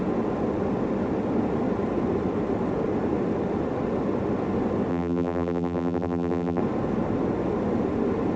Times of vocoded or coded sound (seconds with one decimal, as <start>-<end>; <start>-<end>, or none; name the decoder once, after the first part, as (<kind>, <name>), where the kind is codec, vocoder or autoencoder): 4.9-6.6 (vocoder, BigVGAN v2)